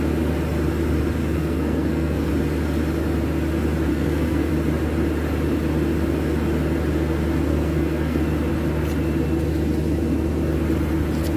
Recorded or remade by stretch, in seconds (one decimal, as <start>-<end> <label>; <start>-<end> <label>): 0.0-1.2 recorded; 1.2-2.3 remade; 2.3-3.9 recorded; 3.9-4.5 remade; 4.5-7.5 recorded; 7.5-8.2 remade; 8.2-11.4 recorded